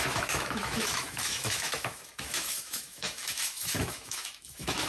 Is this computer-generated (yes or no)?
yes